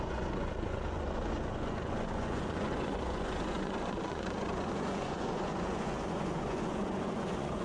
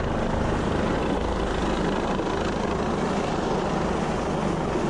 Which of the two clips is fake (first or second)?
first